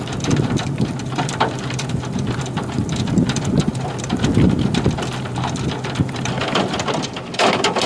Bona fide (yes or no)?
no